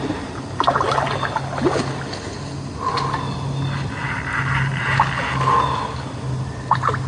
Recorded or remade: recorded